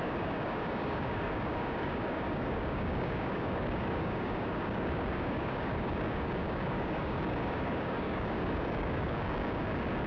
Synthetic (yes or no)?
yes